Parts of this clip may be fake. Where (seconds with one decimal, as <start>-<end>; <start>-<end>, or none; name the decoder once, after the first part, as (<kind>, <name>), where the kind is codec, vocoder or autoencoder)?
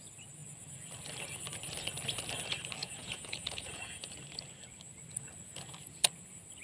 2.8-4.1 (vocoder, Vocos)